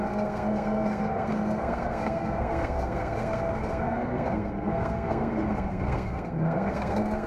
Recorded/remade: remade